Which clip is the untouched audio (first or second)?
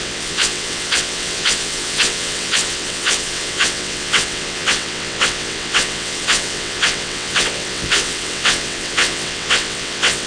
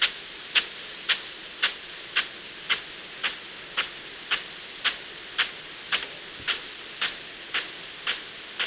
second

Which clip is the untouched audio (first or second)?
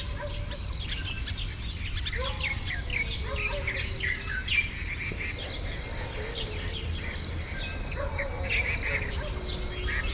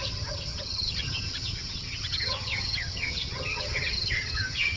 first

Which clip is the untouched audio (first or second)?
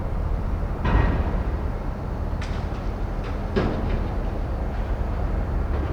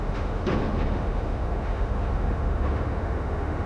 first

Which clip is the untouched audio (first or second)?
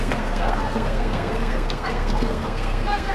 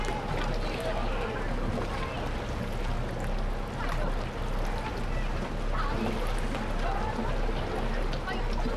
second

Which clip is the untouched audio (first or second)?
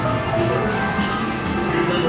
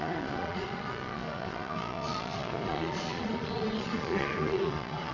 first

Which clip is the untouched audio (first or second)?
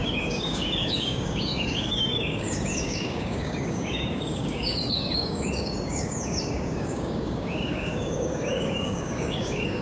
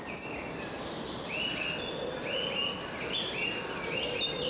second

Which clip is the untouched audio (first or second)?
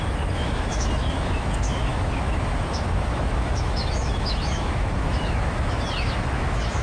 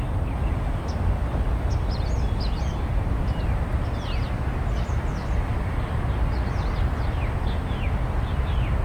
second